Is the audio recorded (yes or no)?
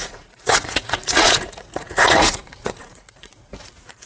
no